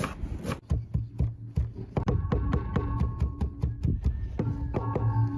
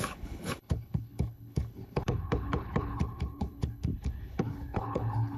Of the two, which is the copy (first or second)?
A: second